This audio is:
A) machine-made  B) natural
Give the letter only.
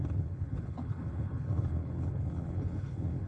A